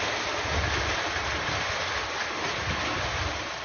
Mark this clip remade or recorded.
recorded